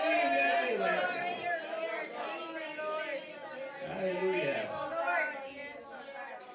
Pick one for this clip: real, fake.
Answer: real